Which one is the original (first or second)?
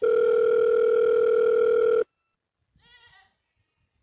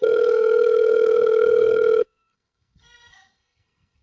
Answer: first